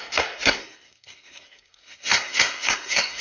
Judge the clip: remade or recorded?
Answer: remade